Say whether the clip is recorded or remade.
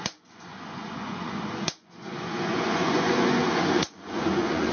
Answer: remade